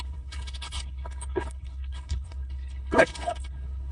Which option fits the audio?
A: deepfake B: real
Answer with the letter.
A